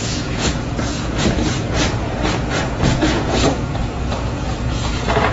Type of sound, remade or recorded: remade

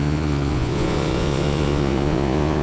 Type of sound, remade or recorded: remade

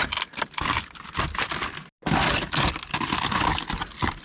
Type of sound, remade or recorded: recorded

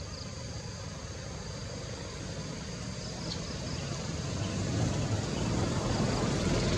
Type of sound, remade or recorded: recorded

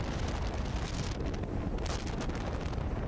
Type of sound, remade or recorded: recorded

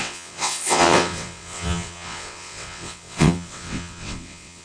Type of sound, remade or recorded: remade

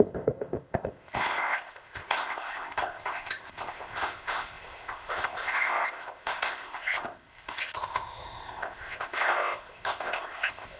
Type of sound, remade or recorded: remade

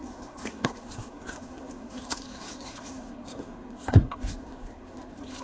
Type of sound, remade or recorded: remade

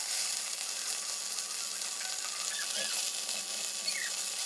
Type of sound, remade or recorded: recorded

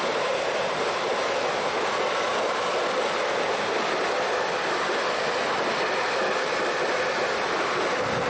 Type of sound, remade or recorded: recorded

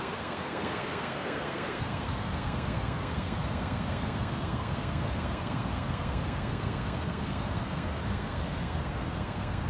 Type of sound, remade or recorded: remade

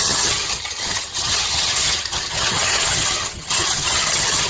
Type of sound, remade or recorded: remade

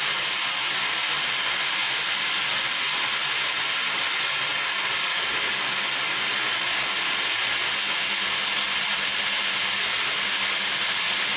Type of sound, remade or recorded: recorded